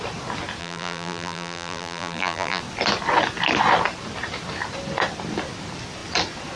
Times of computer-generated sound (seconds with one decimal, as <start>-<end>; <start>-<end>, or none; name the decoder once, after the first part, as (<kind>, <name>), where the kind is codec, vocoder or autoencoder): 0.6-2.6 (vocoder, BigVGAN v2)